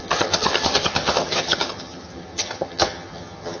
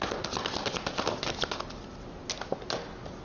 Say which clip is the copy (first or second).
first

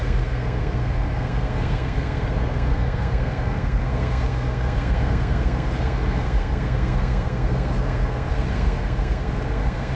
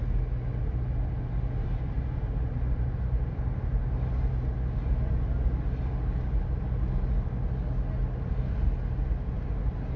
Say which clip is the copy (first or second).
first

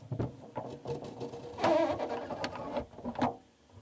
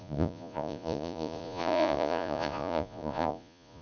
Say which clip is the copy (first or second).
second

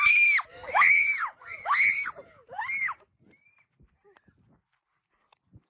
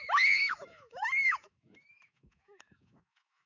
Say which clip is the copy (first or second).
second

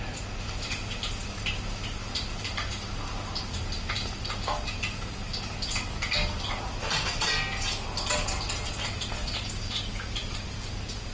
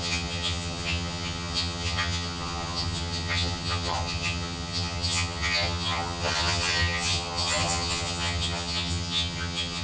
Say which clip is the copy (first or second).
second